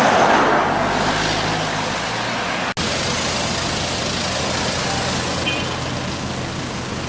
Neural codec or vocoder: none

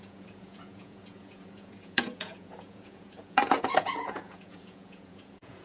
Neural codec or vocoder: vocoder, Vocos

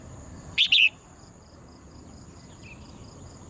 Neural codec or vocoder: none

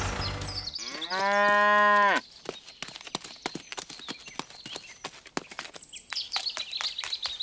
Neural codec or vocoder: none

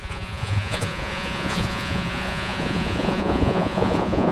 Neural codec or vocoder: vocoder, Vocos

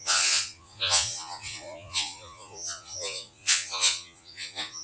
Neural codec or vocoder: vocoder, Vocos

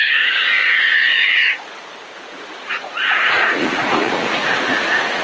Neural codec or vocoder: vocoder, Vocos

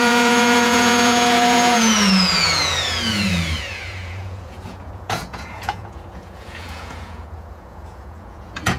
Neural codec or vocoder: vocoder, Vocos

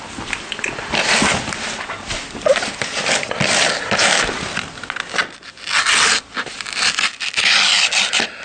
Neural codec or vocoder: none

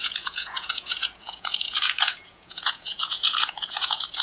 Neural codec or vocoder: vocoder, Vocos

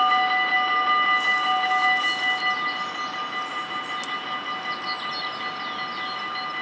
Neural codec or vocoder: none